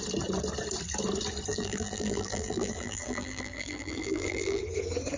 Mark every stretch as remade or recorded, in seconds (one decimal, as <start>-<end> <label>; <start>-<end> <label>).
0.0-1.5 recorded; 1.5-4.6 remade; 4.6-5.2 recorded